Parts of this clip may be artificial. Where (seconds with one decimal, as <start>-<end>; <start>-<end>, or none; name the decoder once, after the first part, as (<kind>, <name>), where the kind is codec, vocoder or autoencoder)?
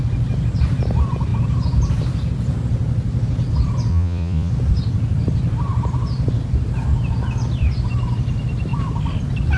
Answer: 3.9-4.5 (vocoder, Vocos)